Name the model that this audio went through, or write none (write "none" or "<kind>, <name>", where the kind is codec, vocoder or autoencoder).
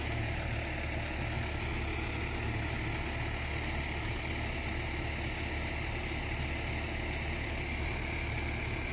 none